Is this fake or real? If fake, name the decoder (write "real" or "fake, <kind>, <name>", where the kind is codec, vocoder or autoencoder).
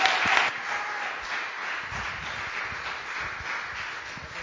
real